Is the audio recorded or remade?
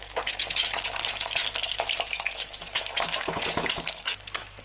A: remade